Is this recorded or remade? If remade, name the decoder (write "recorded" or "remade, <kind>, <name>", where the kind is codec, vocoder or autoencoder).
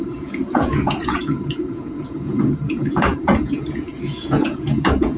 remade, vocoder, Vocos